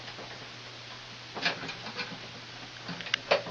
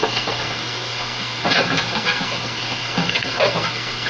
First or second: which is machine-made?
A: second